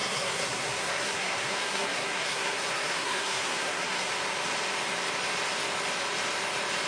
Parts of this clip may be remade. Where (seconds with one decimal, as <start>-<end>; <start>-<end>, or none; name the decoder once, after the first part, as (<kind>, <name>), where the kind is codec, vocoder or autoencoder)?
0.0-4.1 (codec, SNAC)